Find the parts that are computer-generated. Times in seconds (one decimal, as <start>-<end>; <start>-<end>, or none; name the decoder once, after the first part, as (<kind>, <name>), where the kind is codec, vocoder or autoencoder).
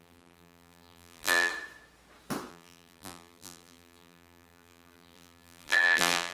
0.0-1.5 (vocoder, BigVGAN v2); 2.5-6.3